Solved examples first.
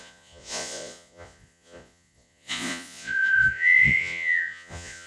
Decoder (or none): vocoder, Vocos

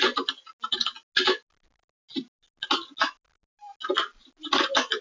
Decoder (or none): none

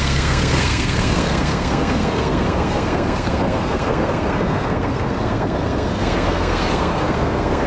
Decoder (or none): codec, SNAC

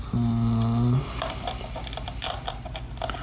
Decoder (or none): none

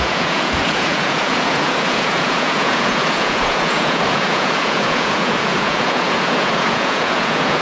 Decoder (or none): vocoder, Vocos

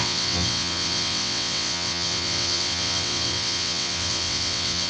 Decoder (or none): vocoder, WaveNeXt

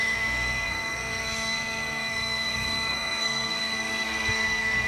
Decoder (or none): codec, SNAC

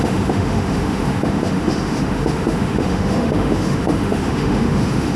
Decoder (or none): autoencoder, DAC-VAE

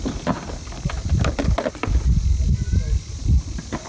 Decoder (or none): none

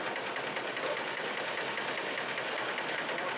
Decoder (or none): none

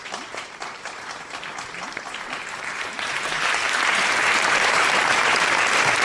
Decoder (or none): vocoder, BigVGAN v2